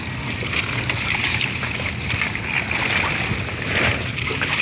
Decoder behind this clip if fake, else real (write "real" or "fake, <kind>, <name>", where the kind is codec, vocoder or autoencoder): real